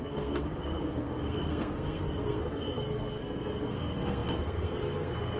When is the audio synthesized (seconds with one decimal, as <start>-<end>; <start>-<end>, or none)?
0.0-5.4